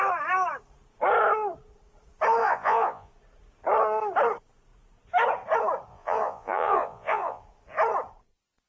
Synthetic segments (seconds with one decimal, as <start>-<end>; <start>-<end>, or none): 2.4-3.1; 5.9-7.4